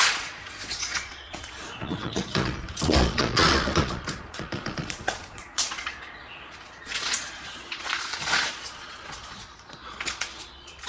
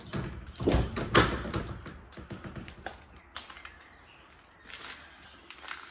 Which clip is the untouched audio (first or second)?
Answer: second